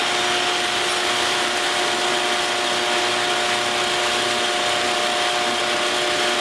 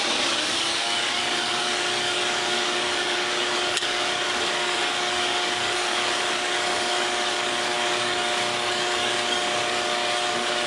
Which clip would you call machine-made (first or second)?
second